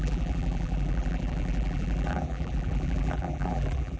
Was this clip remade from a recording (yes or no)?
yes